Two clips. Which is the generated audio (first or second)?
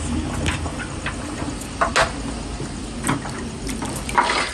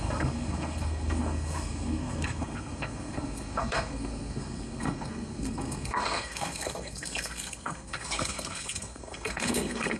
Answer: second